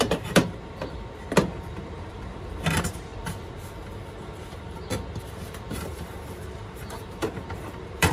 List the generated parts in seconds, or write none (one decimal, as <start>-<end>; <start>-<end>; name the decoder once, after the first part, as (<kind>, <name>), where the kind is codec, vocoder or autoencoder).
0.0-0.4 (vocoder, BigVGAN v2); 1.4-3.1; 5.2-8.1